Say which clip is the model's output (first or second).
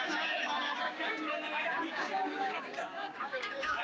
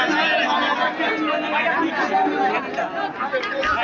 first